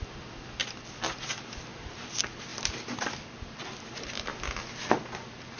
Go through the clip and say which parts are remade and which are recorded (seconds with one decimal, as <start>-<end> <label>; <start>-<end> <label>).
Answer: 0.0-5.6 recorded